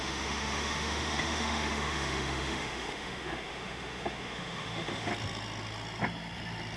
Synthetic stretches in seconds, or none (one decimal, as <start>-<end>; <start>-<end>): 0.0-5.1